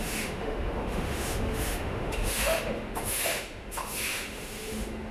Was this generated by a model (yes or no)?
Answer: yes